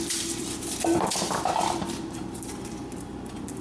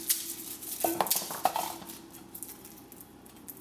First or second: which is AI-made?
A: first